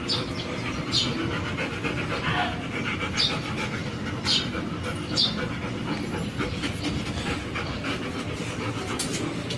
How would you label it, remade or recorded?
recorded